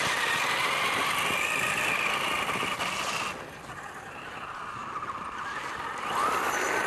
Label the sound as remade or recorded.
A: recorded